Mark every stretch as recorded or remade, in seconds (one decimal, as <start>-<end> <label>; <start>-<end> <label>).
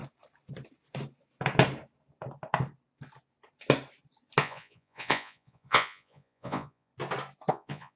0.0-4.4 recorded; 4.4-6.9 remade; 6.9-7.5 recorded; 7.5-8.0 remade